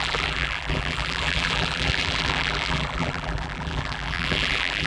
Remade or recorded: remade